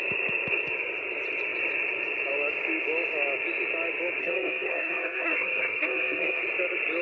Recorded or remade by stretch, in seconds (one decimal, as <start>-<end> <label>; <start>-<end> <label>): 0.0-4.2 recorded; 4.2-6.4 remade; 6.4-7.0 recorded